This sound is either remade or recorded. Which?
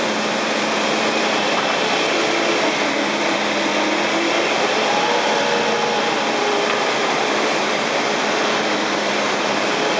remade